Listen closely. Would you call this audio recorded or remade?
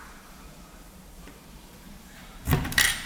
remade